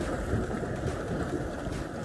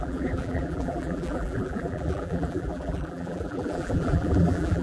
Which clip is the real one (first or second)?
first